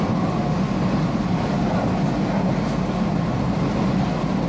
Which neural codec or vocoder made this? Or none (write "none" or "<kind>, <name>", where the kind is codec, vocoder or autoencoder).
none